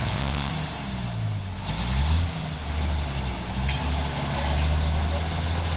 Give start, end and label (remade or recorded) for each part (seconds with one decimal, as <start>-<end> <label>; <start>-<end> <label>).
0.0-0.5 remade; 0.5-5.8 recorded